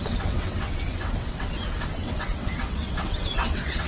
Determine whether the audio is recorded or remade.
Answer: remade